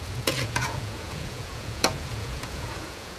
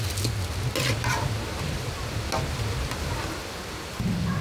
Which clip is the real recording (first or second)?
second